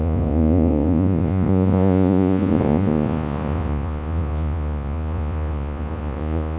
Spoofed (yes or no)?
yes